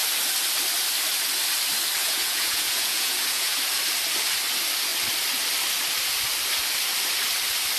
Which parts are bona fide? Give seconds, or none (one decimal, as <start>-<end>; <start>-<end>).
0.0-2.0; 3.6-7.8